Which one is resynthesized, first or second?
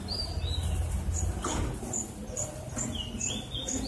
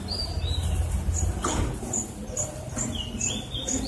second